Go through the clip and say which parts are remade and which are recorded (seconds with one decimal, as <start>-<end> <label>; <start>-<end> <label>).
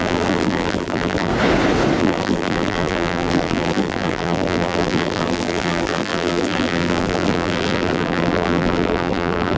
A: 0.0-1.3 remade; 1.3-2.0 recorded; 2.0-9.6 remade